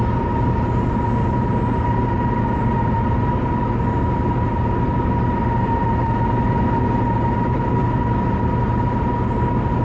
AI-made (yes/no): no